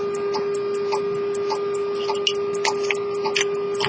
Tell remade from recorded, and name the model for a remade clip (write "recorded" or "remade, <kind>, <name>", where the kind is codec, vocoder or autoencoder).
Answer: recorded